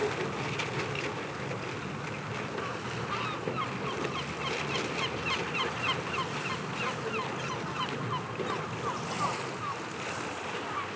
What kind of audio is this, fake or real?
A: real